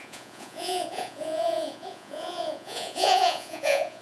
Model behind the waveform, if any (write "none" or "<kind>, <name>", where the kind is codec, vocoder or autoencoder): vocoder, Vocos